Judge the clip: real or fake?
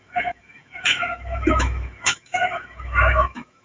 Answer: fake